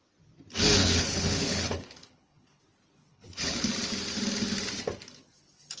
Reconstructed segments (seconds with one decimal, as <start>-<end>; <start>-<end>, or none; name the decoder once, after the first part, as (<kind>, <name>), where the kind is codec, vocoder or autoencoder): 0.8-2.6 (codec, HILCodec); 3.1-3.7